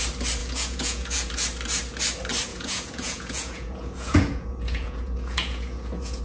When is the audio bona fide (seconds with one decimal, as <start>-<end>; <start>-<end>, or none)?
0.0-0.4; 1.3-2.5